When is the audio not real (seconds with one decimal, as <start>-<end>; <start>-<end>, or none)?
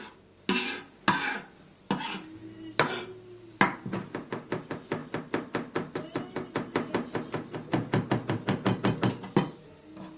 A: none